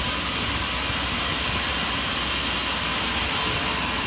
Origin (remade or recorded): recorded